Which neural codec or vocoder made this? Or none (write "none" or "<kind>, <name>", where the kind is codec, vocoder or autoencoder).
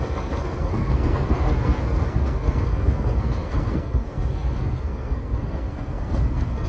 codec, SNAC